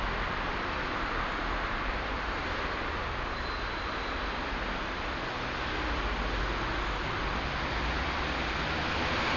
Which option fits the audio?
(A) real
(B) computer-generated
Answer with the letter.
A